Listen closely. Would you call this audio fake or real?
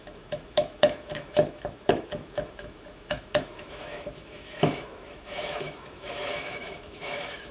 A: fake